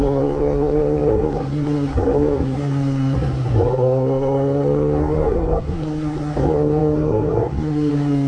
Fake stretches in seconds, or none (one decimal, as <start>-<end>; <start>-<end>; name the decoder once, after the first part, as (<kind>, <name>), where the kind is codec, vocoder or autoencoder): 0.0-8.3 (codec, SNAC)